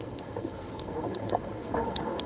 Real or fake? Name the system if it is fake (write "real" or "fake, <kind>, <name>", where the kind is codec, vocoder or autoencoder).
fake, codec, SNAC